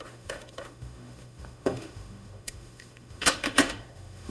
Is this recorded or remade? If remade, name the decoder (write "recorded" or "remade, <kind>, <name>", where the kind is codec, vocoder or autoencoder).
remade, autoencoder, DAC-VAE